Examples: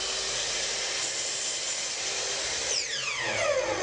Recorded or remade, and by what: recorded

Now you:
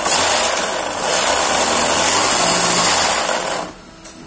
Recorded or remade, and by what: recorded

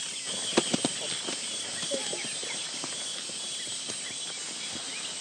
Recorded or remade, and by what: recorded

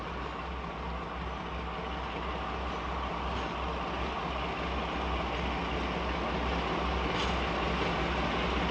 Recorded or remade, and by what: recorded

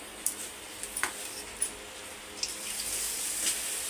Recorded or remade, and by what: recorded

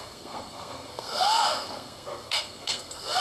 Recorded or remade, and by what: remade, codec, SNAC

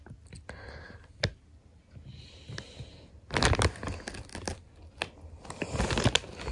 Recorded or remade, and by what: recorded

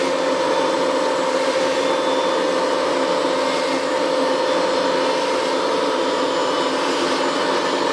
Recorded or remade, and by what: recorded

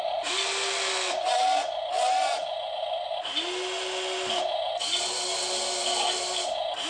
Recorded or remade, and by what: recorded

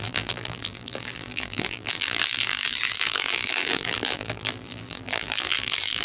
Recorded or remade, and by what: remade, vocoder, BigVGAN v2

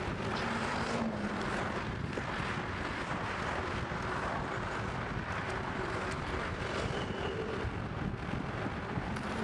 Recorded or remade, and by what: recorded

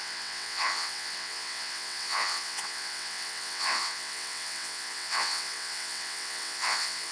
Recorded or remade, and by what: remade, vocoder, WaveNeXt